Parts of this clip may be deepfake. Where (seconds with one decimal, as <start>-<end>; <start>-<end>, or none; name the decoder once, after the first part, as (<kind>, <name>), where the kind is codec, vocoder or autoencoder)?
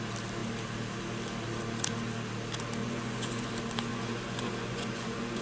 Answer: 2.8-3.5 (vocoder, Vocos); 3.9-5.4